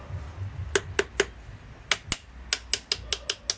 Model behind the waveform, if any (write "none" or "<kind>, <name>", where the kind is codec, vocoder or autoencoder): none